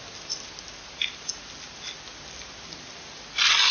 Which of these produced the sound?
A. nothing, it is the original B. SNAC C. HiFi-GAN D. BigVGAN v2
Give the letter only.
A